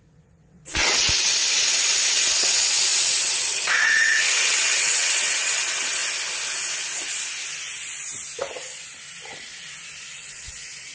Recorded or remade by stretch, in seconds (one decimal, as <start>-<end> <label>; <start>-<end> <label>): 0.0-6.0 remade; 6.0-10.1 recorded; 10.1-10.9 remade